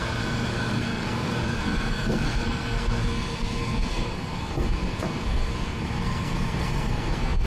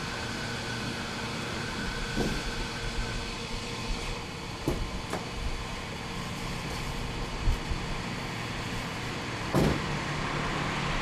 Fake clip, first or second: first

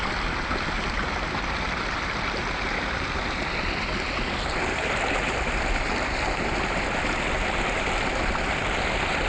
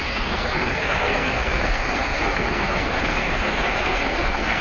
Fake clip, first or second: second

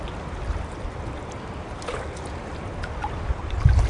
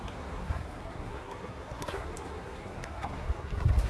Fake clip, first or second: second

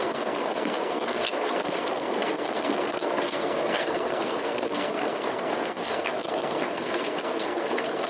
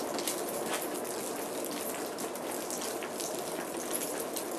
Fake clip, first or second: first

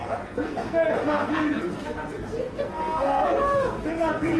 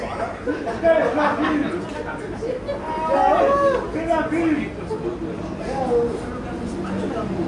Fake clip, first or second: first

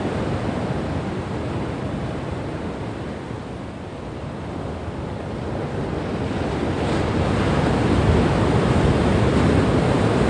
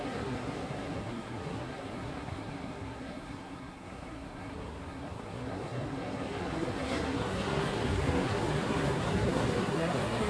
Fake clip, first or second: second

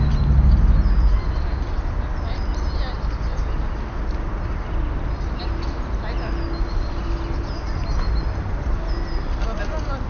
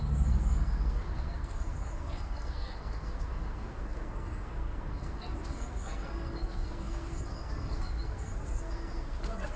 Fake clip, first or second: second